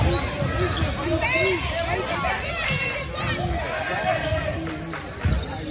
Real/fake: real